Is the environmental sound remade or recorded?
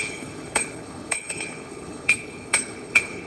remade